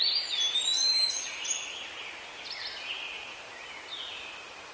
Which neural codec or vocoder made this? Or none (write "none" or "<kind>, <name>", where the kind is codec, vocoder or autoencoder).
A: none